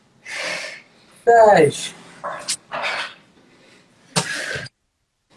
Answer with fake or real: real